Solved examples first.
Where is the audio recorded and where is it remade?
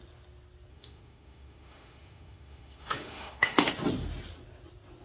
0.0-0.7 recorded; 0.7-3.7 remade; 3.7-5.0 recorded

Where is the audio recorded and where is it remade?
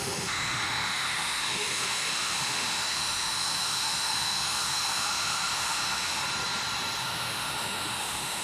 0.0-6.2 remade; 6.2-7.0 recorded; 7.0-8.4 remade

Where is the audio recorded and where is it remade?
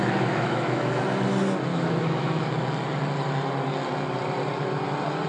0.0-1.0 remade; 1.0-1.7 recorded; 1.7-2.4 remade; 2.4-5.3 recorded